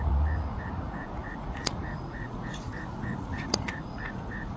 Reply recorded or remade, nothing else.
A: remade